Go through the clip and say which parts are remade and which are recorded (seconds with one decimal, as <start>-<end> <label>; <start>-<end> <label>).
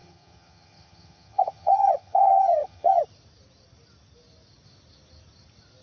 0.0-3.0 remade; 3.0-5.8 recorded